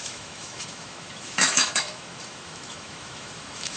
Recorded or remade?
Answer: remade